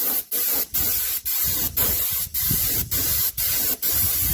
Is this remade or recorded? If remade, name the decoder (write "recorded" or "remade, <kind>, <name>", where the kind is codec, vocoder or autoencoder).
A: recorded